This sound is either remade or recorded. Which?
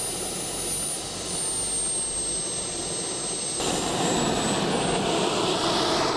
recorded